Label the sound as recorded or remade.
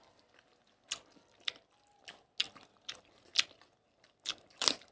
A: recorded